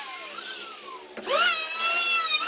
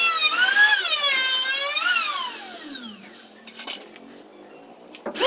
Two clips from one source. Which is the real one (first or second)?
second